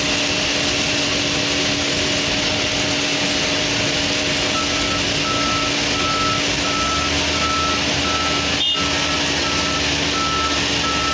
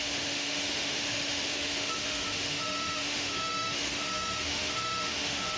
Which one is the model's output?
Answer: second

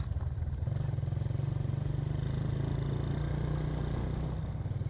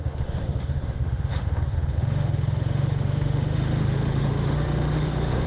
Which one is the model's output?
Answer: second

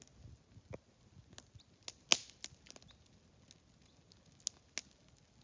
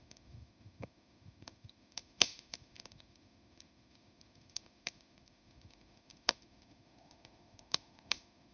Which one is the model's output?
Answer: second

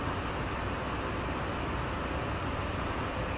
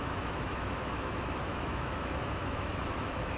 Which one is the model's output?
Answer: second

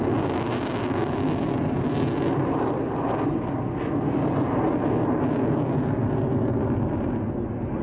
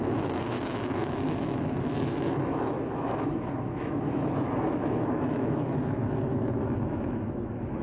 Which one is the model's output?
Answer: second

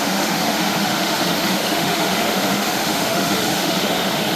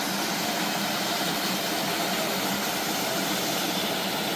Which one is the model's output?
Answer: first